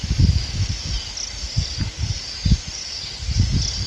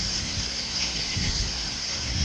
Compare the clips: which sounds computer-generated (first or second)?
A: second